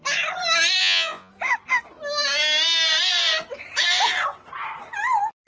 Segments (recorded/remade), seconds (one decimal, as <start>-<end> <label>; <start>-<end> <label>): 0.0-0.8 recorded; 0.8-1.3 remade; 1.3-5.5 recorded